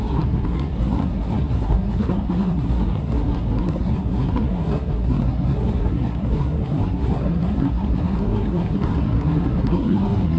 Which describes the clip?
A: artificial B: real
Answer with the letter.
A